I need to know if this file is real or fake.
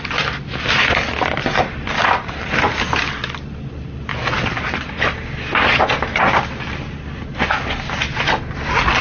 real